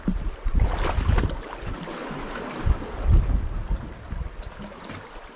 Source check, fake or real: real